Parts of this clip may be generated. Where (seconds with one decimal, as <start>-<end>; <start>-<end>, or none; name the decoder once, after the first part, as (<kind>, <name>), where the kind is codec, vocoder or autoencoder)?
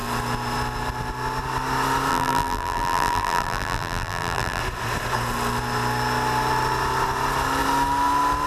2.1-4.6 (vocoder, BigVGAN v2)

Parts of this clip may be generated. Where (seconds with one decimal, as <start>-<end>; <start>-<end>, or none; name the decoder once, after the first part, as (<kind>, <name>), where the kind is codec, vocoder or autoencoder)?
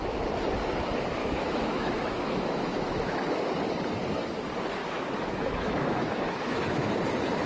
1.2-3.5 (autoencoder, DAC-VAE); 4.8-6.9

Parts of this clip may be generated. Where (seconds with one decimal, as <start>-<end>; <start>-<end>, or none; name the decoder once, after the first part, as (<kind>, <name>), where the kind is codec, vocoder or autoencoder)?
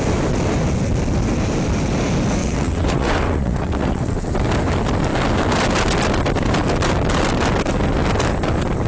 2.4-4.3 (vocoder, WaveNeXt)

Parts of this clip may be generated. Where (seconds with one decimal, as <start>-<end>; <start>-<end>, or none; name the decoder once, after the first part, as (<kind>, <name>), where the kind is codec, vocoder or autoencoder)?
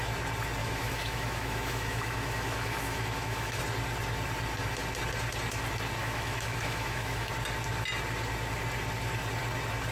0.6-3.6 (autoencoder, DAC-VAE); 6.0-7.3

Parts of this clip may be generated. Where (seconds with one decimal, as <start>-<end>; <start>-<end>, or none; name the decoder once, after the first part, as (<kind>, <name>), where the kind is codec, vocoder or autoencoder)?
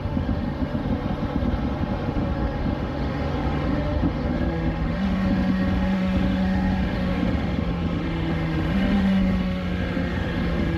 0.0-0.8 (autoencoder, DAC-VAE); 2.1-10.8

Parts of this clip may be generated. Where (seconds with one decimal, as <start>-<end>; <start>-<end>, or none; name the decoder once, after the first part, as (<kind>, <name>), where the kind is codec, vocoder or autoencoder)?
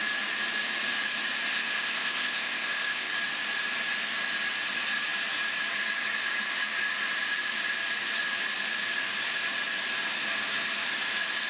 1.5-3.1 (codec, ZipCodec)